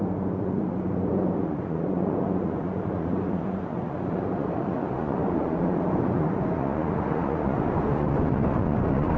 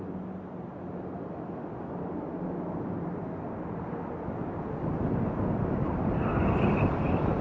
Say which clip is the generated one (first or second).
first